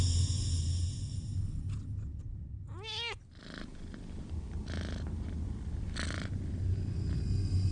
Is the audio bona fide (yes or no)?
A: yes